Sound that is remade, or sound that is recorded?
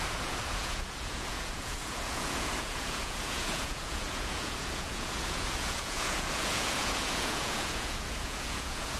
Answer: remade